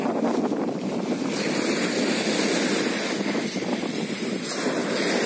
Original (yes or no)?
yes